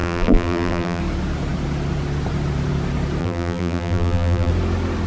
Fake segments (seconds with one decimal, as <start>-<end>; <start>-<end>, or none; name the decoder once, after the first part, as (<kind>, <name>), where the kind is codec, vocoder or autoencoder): 0.0-1.0 (vocoder, BigVGAN v2); 3.2-4.5